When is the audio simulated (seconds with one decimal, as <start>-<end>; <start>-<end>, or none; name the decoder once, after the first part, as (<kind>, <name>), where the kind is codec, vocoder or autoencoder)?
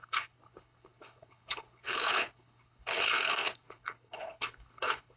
0.0-5.2 (codec, HILCodec)